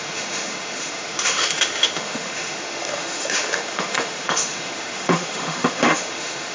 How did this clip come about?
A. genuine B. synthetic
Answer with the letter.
B